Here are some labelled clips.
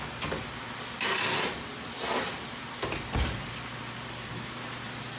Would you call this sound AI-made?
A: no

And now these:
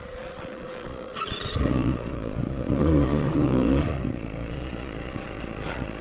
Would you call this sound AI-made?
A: yes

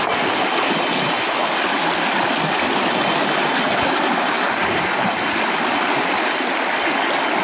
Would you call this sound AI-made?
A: no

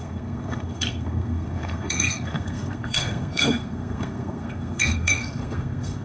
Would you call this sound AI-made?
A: yes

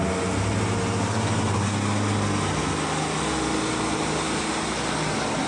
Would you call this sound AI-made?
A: no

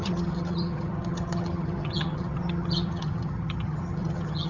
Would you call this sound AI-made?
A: yes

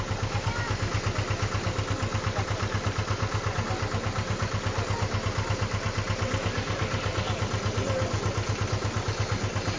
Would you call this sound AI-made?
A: no